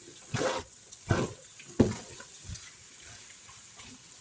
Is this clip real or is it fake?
fake